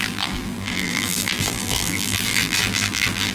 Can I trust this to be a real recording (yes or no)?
no